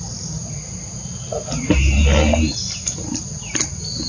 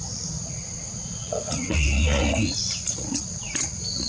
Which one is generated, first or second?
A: second